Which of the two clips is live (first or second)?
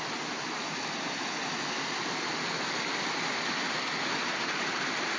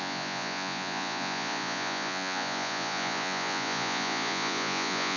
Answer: first